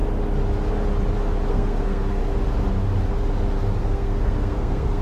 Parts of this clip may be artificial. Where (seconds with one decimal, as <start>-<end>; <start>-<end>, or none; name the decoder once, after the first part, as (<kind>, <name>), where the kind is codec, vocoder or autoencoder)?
1.5-2.2 (codec, SNAC); 3.8-5.0